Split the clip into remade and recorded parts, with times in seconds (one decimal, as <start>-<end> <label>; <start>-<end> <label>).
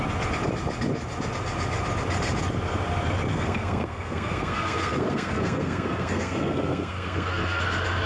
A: 0.0-3.3 recorded; 3.3-7.6 remade; 7.6-8.1 recorded